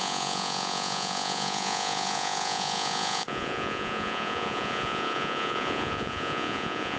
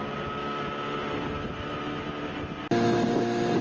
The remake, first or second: first